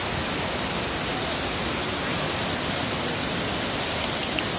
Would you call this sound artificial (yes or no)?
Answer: no